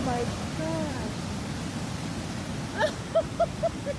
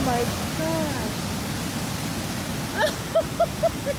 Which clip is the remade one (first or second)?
first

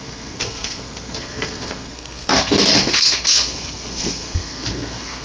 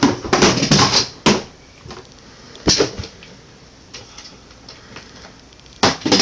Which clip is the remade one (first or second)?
first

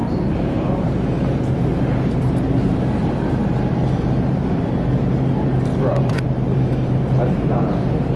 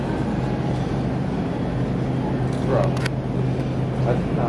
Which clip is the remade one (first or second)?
first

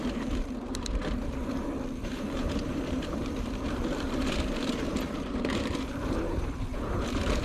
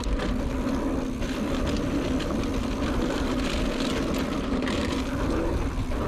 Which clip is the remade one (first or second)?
first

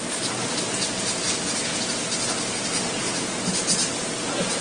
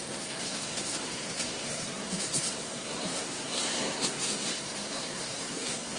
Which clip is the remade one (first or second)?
second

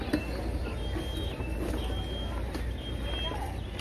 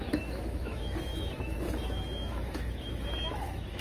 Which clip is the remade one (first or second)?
second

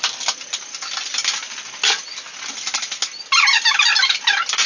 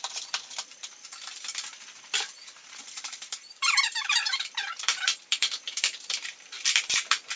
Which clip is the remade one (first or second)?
second